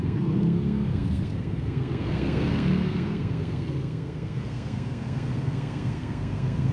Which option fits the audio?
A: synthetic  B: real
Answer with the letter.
A